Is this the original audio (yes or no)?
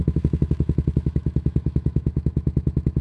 no